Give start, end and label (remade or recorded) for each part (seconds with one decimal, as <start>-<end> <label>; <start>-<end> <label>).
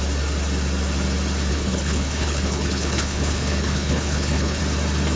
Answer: 0.0-1.5 recorded; 1.5-4.6 remade; 4.6-5.2 recorded